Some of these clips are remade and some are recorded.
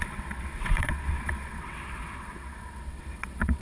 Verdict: remade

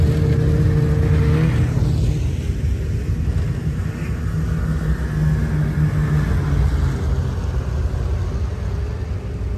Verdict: recorded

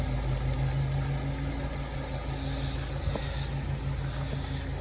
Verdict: recorded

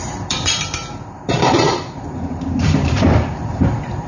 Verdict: remade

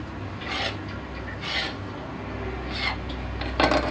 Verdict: recorded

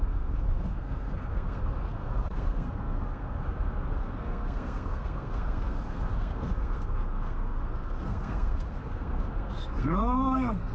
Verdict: remade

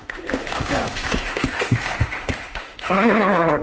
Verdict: remade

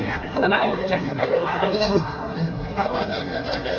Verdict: remade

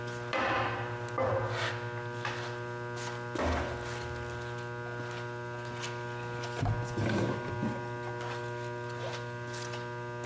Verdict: recorded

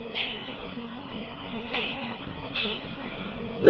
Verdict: remade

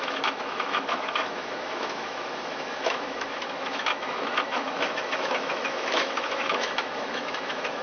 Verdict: remade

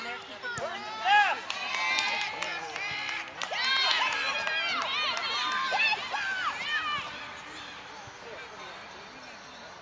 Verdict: recorded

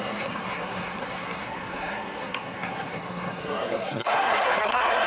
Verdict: remade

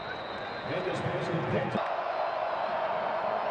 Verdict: remade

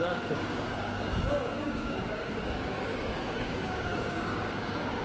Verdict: remade